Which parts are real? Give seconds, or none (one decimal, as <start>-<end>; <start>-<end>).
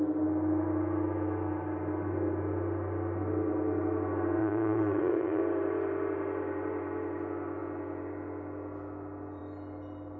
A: 0.0-4.4; 5.4-10.2